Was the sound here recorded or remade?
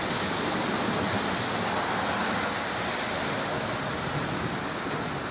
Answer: recorded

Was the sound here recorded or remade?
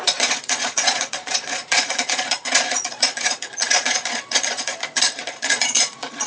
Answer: remade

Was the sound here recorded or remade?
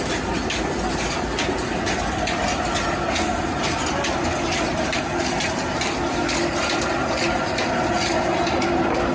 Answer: recorded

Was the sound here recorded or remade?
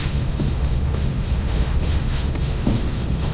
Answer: remade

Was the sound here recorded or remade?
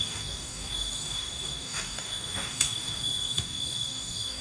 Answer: remade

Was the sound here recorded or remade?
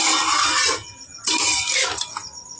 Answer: recorded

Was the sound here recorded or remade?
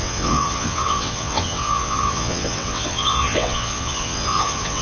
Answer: remade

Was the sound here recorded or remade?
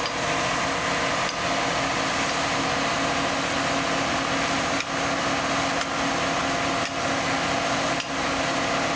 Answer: recorded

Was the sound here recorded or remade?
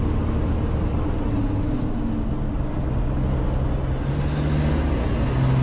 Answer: recorded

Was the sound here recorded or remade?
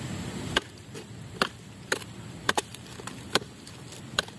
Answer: remade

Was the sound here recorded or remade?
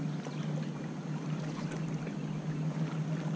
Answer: recorded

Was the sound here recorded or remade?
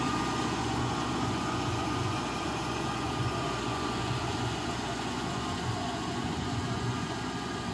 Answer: remade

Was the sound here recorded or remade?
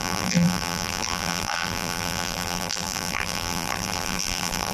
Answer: remade